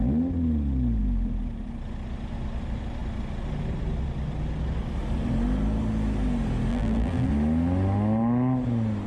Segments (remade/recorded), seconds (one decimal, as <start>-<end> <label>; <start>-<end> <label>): 0.0-6.7 recorded; 6.7-7.3 remade; 7.3-9.1 recorded